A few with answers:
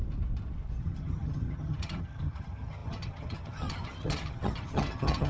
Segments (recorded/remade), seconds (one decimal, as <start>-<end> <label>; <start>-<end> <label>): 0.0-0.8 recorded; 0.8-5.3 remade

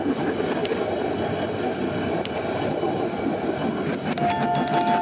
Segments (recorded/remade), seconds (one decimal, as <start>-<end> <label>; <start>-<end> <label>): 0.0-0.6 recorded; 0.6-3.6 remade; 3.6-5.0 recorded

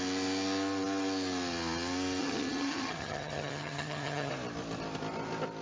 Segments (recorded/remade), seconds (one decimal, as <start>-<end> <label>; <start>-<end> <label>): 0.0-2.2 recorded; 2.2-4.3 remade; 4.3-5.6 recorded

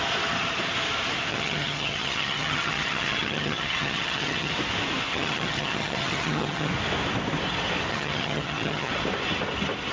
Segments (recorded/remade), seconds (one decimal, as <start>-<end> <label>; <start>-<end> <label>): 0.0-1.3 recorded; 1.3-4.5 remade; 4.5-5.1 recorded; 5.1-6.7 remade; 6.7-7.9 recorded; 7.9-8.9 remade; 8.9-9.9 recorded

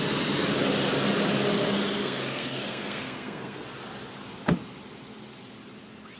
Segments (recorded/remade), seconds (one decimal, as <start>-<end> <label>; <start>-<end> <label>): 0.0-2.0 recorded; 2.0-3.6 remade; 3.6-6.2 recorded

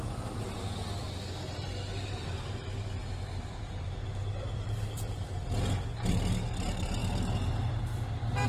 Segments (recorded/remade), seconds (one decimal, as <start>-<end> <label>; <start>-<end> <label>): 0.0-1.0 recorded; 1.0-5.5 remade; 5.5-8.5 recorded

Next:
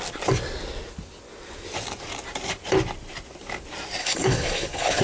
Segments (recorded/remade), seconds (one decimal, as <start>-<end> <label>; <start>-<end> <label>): 0.0-4.0 recorded; 4.0-5.0 remade